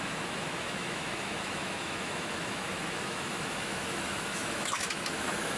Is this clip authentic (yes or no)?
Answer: no